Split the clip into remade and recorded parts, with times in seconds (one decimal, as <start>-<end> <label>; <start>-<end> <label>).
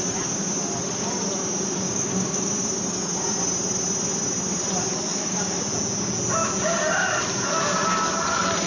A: 0.0-1.8 recorded; 1.8-2.5 remade; 2.5-5.1 recorded; 5.1-5.6 remade; 5.6-8.7 recorded